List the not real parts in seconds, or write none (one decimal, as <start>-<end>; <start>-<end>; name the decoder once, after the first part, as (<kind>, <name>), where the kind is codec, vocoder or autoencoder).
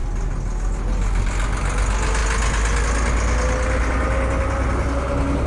none